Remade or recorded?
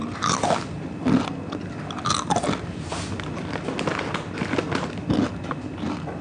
recorded